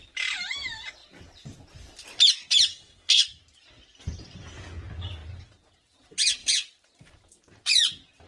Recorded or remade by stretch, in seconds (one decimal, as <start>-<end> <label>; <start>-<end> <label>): 0.0-2.7 recorded; 2.7-3.2 remade; 3.2-8.3 recorded